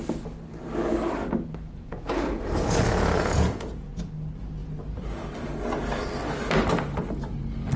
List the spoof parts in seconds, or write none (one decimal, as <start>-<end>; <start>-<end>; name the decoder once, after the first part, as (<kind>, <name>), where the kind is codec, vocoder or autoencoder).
1.2-4.0 (vocoder, Vocos)